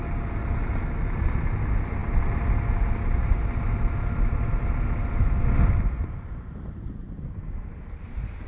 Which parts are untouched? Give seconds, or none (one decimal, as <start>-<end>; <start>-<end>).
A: 0.0-8.5